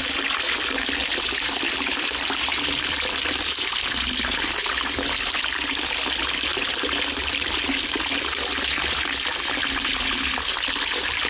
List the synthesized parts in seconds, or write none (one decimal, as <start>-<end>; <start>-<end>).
none